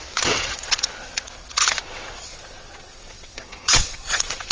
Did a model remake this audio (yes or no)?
yes